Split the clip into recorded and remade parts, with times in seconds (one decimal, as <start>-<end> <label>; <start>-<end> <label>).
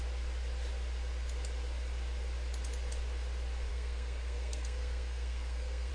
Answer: 0.0-3.7 recorded; 3.7-5.9 remade